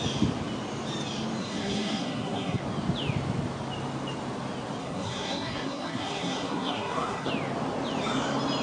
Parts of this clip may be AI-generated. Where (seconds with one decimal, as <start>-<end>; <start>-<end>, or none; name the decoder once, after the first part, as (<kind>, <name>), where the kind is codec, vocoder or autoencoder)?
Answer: 1.4-2.6 (codec, SNAC); 4.8-7.3